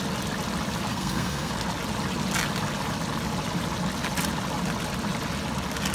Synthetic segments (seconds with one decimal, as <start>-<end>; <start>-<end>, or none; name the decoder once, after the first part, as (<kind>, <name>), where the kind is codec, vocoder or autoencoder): 0.9-1.5 (codec, SNAC)